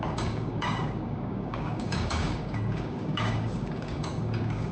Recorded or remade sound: remade